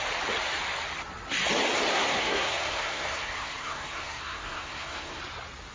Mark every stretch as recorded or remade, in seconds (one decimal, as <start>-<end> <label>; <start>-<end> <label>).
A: 0.0-1.9 recorded; 1.9-5.2 remade; 5.2-5.7 recorded